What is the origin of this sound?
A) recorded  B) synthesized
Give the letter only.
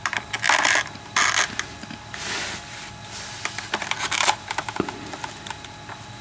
A